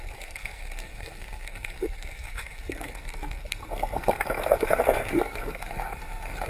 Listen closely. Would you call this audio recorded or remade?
remade